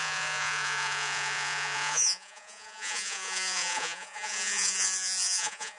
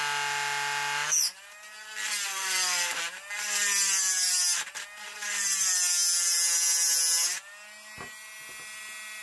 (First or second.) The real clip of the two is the second